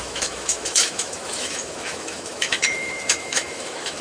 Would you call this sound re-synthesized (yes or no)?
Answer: yes